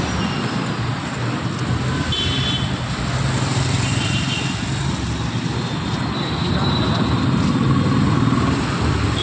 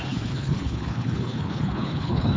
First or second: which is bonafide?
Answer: first